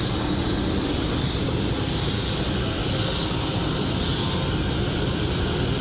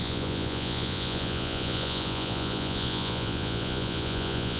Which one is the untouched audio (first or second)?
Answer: first